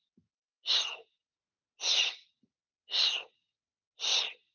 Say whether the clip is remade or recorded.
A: recorded